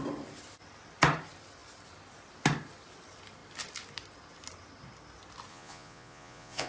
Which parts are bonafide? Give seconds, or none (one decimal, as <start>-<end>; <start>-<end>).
0.0-5.5